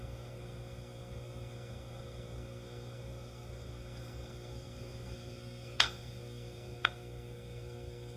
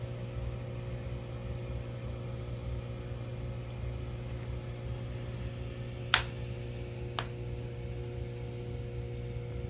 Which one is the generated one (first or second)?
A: first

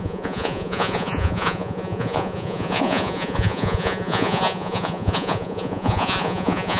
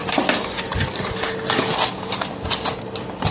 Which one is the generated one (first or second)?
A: first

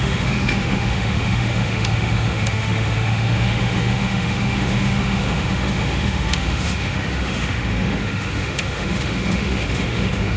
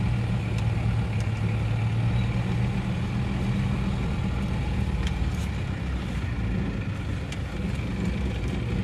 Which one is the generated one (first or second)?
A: first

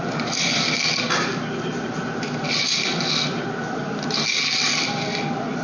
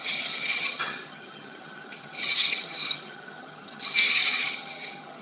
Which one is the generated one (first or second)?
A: second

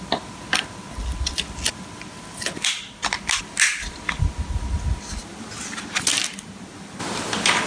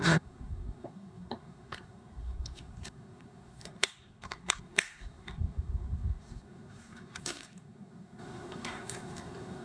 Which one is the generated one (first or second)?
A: second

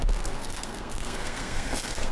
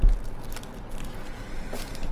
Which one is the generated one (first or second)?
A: first